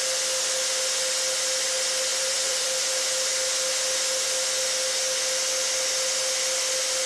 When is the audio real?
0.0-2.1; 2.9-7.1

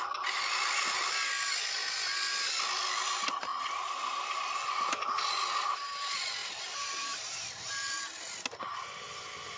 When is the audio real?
0.0-6.4; 8.0-9.6

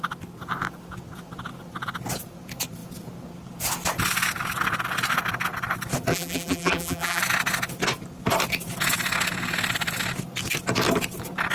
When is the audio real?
0.0-6.1; 7.2-11.5

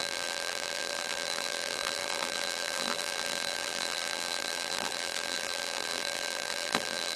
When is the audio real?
none

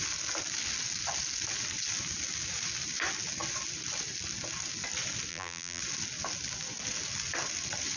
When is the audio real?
0.0-5.3; 5.8-8.0

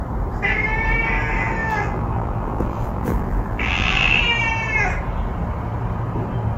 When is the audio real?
0.0-1.6; 4.2-6.6

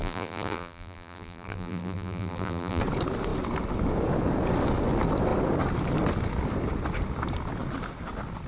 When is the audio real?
2.8-8.5

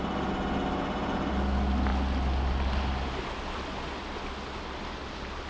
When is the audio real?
0.0-5.5